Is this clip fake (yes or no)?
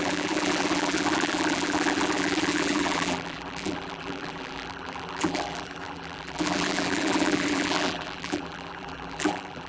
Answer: yes